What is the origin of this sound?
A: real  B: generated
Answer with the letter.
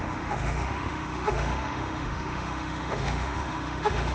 B